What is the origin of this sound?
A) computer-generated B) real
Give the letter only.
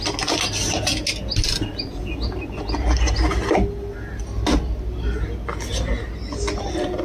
B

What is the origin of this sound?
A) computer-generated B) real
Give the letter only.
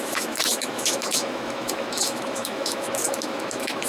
A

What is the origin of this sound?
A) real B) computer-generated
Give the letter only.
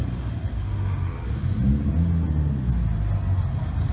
A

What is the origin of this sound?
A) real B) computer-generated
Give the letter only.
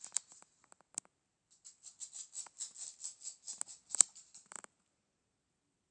A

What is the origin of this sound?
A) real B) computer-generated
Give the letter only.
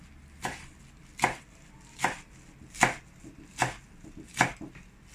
A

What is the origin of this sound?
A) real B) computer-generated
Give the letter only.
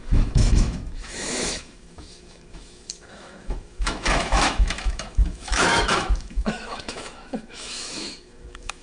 B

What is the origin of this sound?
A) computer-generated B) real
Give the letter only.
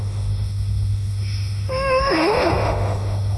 A